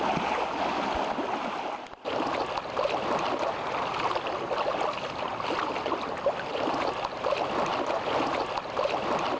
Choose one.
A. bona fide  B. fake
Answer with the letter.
A